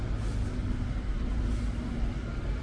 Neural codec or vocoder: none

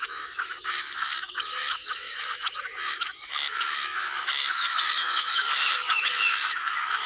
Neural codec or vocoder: autoencoder, DAC-VAE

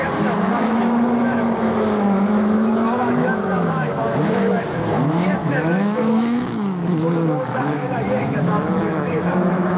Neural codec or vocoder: autoencoder, DAC-VAE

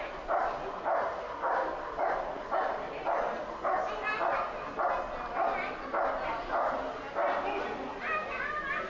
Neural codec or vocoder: none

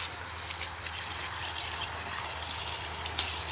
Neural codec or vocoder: none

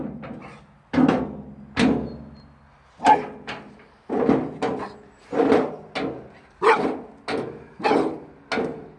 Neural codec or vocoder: none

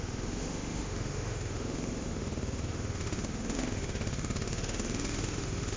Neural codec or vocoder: autoencoder, DAC-VAE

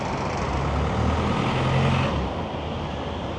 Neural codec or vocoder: none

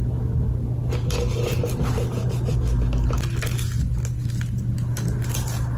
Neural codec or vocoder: none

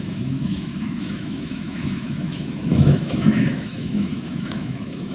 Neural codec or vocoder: autoencoder, DAC-VAE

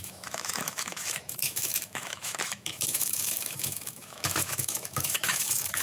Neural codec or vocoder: autoencoder, DAC-VAE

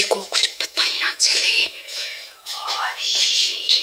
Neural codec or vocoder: autoencoder, DAC-VAE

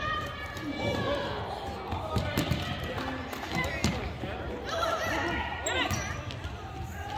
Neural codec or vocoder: none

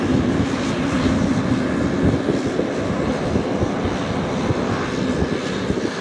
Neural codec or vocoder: none